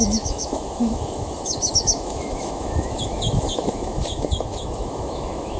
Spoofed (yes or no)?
yes